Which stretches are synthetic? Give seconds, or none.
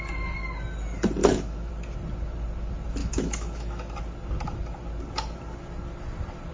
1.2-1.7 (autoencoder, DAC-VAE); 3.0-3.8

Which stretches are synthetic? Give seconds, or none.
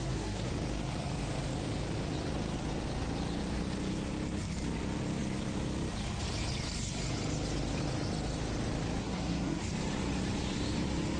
0.0-0.5 (codec, SNAC); 9.0-9.6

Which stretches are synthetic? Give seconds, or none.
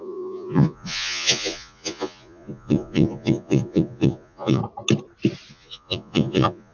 0.0-4.6 (vocoder, Vocos); 5.5-6.7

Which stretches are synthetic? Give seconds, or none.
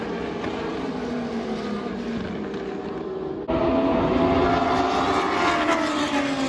none